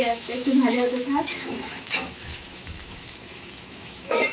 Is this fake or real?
fake